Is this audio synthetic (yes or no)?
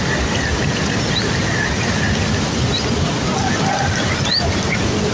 no